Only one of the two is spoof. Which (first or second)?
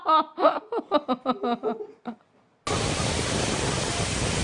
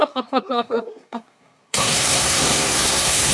second